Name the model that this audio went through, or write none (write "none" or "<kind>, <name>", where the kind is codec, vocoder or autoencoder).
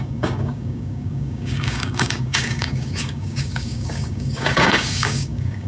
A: codec, DAC